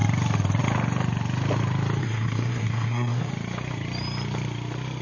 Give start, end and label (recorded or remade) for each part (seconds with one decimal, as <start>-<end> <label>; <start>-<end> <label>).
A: 0.0-2.0 recorded; 2.0-3.3 remade; 3.3-5.0 recorded